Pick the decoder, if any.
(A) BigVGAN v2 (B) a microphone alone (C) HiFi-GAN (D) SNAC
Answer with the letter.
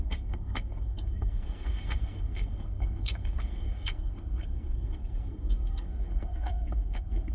D